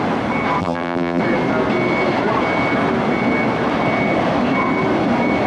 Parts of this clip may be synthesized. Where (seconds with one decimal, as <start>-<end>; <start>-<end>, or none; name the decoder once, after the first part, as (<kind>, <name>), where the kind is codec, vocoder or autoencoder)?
0.6-1.2 (vocoder, BigVGAN v2)

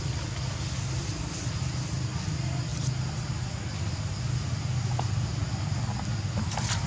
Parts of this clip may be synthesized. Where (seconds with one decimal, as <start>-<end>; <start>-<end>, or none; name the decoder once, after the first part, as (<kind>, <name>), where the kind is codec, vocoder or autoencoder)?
none

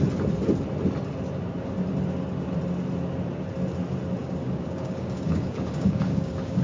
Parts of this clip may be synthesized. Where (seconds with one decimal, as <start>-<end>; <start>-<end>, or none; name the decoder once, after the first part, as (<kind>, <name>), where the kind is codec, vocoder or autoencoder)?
4.2-6.6 (codec, DAC)

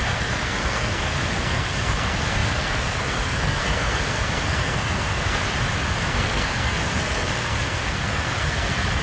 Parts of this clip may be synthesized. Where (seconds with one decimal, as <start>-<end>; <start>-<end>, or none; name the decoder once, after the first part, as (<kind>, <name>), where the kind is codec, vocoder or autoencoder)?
0.0-5.4 (codec, SNAC); 6.0-9.0

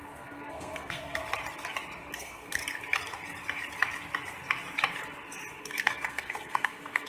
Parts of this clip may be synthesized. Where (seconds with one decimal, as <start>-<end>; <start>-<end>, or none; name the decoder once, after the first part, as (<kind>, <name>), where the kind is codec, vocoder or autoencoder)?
0.0-1.2 (codec, SNAC); 2.2-2.6; 5.6-7.1

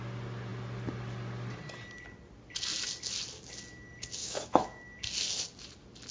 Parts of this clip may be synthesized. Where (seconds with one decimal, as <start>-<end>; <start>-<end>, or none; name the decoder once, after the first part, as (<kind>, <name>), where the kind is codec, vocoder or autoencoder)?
4.2-4.8 (autoencoder, DAC-VAE)

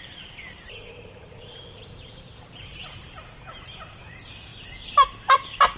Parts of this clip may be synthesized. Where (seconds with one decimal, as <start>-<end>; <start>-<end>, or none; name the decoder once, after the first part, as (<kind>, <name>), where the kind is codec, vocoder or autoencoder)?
0.0-4.5 (vocoder, BigVGAN v2)